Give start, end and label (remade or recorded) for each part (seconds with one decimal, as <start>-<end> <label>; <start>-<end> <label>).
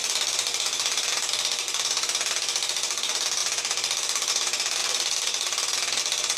0.0-6.4 recorded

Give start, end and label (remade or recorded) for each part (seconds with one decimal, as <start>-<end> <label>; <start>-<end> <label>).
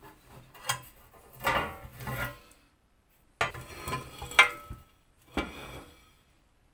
0.0-1.9 recorded; 1.9-3.1 remade; 3.1-5.6 recorded; 5.6-6.3 remade; 6.3-6.7 recorded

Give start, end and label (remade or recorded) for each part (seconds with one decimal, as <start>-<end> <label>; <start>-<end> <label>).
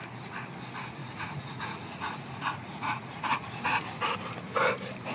0.0-1.0 recorded; 1.0-3.9 remade; 3.9-5.1 recorded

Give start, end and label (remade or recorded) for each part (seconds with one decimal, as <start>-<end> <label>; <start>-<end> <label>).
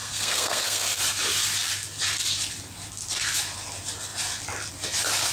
0.0-1.0 remade; 1.0-5.3 recorded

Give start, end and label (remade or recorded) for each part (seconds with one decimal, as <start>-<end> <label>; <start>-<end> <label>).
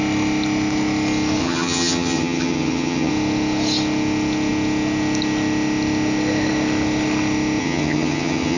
0.0-1.4 recorded; 1.4-3.1 remade; 3.1-7.6 recorded; 7.6-8.6 remade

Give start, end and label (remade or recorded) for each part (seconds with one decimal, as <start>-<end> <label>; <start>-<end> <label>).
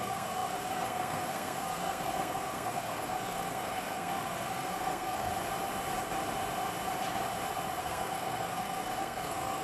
0.0-5.3 remade; 5.3-7.8 recorded; 7.8-9.6 remade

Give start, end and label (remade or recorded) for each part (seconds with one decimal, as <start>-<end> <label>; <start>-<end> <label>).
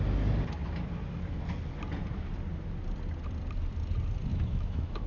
0.0-4.3 recorded; 4.3-5.1 remade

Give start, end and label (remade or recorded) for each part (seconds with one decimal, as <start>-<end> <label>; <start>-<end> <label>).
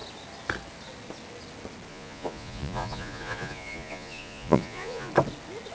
0.0-1.9 recorded; 1.9-5.1 remade; 5.1-5.7 recorded